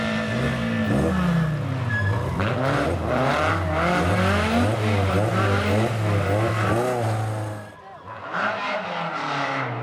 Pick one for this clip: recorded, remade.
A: recorded